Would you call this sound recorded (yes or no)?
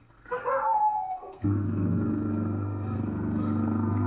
no